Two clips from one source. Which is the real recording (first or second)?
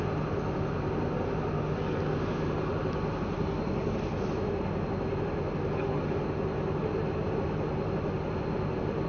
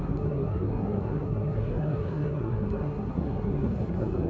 first